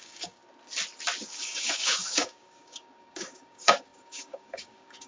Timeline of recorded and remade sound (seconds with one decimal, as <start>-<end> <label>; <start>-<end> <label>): 0.0-0.4 remade; 0.4-1.2 recorded; 1.2-5.1 remade